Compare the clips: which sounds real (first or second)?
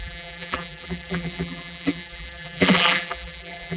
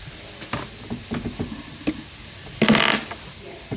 second